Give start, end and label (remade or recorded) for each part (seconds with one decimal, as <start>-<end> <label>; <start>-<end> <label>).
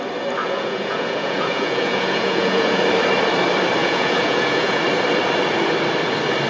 0.0-0.4 recorded; 0.4-2.8 remade; 2.8-3.8 recorded; 3.8-4.8 remade; 4.8-6.5 recorded